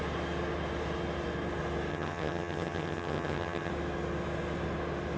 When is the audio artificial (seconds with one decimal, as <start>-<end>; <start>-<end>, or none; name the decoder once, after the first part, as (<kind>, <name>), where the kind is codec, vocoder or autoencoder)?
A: 1.9-3.7 (vocoder, HiFi-GAN)